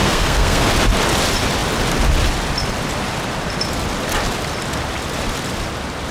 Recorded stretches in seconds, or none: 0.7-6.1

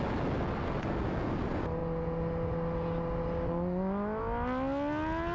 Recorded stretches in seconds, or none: 0.0-5.3

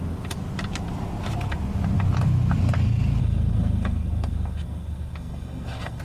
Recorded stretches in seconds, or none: 0.0-3.2